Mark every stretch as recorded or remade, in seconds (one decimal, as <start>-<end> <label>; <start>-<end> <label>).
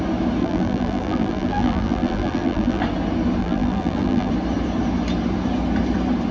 0.0-0.4 recorded; 0.4-2.8 remade; 2.8-3.4 recorded; 3.4-4.3 remade; 4.3-6.3 recorded